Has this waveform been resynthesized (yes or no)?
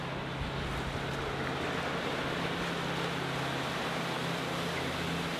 no